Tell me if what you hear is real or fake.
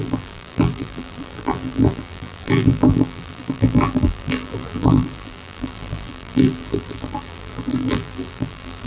fake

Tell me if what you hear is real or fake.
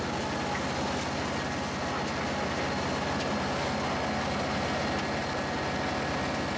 real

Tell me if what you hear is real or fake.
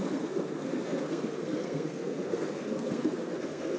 fake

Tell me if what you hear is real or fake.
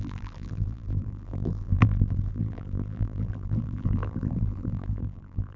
fake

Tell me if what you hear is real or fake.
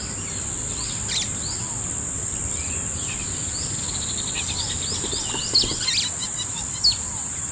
real